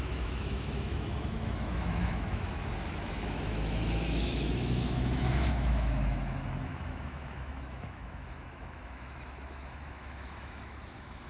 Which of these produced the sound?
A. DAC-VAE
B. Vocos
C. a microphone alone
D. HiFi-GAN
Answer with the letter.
A